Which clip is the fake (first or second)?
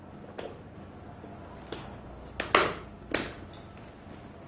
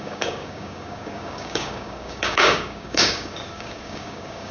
second